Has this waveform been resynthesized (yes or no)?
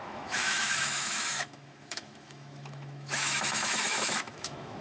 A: yes